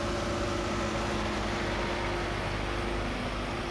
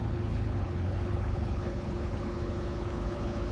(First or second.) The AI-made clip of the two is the second